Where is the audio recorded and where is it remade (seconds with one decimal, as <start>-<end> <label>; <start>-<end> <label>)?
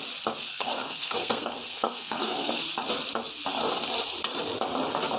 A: 0.0-0.5 recorded; 0.5-2.6 remade; 2.6-5.2 recorded